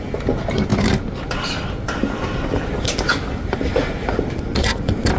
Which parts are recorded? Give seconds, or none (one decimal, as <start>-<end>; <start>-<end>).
0.0-5.2